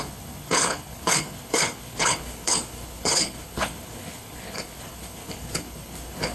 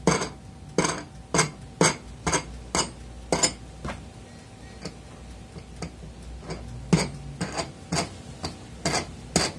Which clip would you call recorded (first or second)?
second